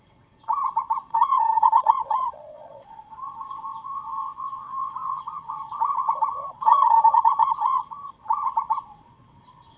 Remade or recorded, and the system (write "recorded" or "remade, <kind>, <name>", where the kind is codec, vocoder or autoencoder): remade, vocoder, WaveNeXt